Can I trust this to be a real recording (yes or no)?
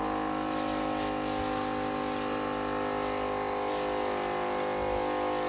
yes